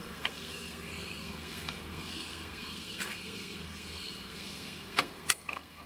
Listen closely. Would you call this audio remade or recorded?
remade